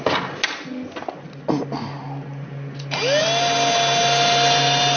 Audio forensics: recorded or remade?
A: recorded